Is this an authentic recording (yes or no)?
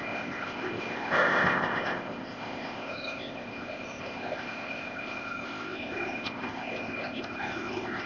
no